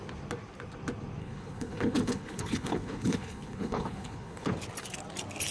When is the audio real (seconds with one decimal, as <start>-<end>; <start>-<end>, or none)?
0.0-1.2; 4.5-5.5